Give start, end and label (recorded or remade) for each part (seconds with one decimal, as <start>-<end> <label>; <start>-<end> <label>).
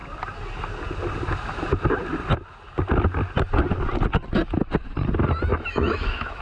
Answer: 0.0-5.5 recorded; 5.5-6.4 remade